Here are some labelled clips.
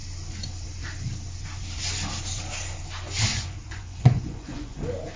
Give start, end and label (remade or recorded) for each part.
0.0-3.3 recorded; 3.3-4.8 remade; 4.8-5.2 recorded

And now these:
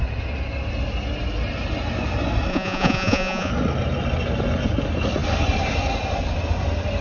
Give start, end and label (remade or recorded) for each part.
0.0-2.5 recorded; 2.5-3.5 remade; 3.5-7.0 recorded

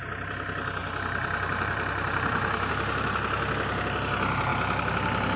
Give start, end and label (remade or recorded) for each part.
0.0-0.8 recorded; 0.8-2.7 remade; 2.7-5.4 recorded

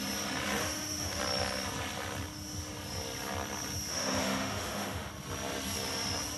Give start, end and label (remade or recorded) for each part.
0.0-0.6 recorded; 0.6-1.2 remade; 1.2-3.9 recorded; 3.9-5.1 remade; 5.1-6.4 recorded

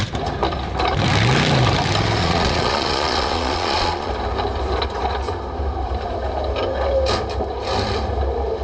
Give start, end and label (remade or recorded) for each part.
0.0-2.2 recorded; 2.2-4.1 remade; 4.1-8.6 recorded

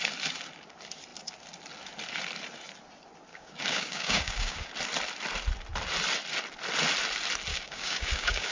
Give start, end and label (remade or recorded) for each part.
0.0-3.3 recorded; 3.3-4.7 remade; 4.7-7.5 recorded; 7.5-8.5 remade

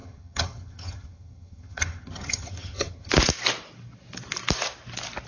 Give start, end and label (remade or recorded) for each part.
0.0-3.1 remade; 3.1-5.3 recorded